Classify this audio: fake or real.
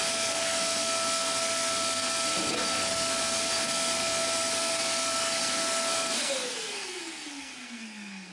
fake